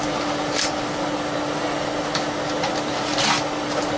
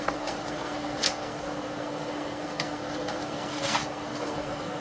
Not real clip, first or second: second